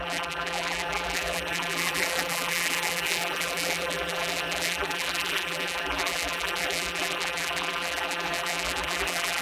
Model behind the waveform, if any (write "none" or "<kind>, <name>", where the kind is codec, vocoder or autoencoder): vocoder, BigVGAN v2